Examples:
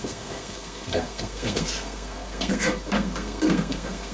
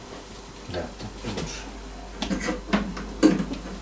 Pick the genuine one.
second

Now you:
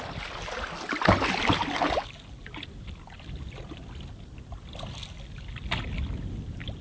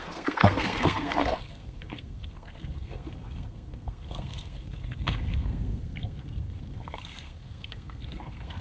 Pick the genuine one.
first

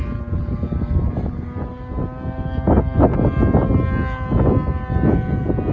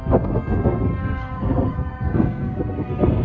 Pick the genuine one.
first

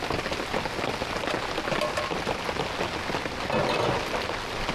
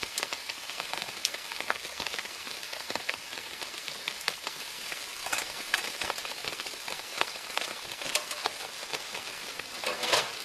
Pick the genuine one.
first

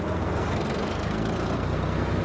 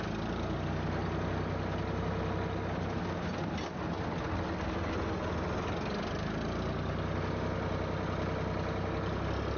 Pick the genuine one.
second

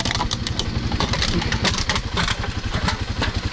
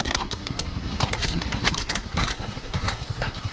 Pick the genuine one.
first